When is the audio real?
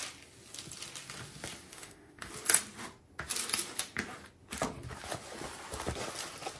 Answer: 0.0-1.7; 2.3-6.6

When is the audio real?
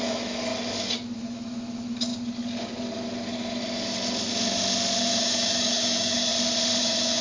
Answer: 0.5-1.2; 2.1-5.0; 6.3-6.8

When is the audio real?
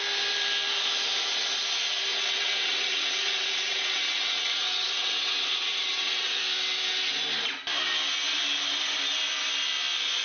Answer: 0.0-2.1; 6.4-10.2